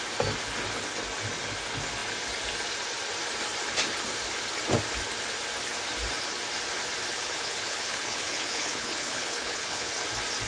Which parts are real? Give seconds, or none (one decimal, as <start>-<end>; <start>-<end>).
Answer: 0.0-7.1; 9.9-10.5